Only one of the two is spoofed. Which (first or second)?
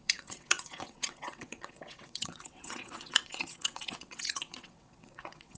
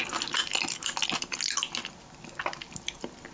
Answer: first